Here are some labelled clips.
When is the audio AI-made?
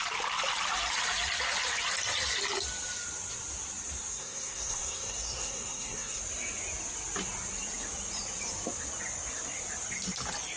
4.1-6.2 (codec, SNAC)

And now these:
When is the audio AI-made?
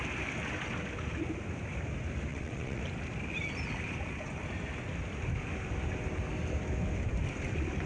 2.3-2.8 (vocoder, WaveNeXt)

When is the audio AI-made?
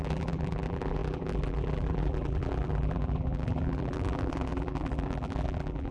0.0-5.9 (vocoder, BigVGAN v2)